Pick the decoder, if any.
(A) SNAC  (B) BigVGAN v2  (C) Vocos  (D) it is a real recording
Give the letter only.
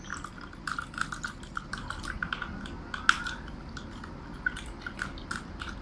D